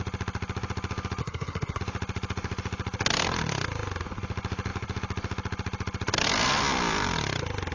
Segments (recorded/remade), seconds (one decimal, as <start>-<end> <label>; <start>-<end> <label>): 0.0-1.2 recorded; 1.2-1.8 remade; 1.8-7.7 recorded